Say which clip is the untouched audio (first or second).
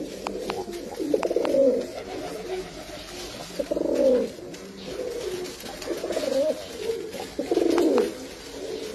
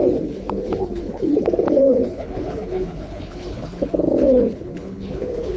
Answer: first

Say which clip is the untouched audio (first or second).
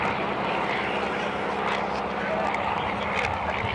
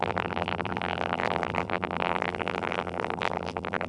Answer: first